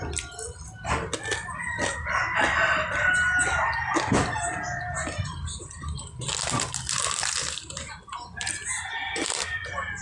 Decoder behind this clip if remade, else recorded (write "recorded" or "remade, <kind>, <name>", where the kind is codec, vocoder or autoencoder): recorded